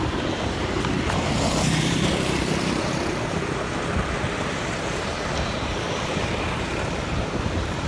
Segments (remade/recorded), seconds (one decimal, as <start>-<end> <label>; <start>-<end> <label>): 0.0-0.6 recorded; 0.6-2.1 remade; 2.1-7.9 recorded